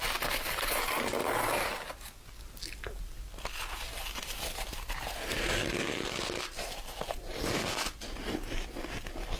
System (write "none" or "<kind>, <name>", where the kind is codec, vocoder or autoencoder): none